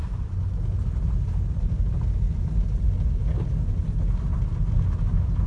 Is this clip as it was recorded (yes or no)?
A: yes